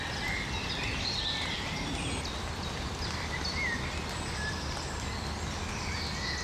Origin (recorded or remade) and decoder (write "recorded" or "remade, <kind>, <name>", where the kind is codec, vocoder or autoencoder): recorded